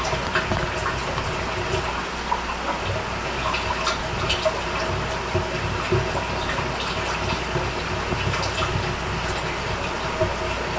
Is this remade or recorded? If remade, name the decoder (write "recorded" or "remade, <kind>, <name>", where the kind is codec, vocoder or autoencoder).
recorded